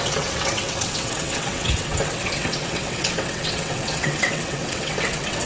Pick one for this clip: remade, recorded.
remade